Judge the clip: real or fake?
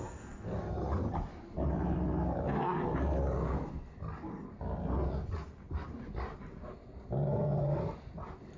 real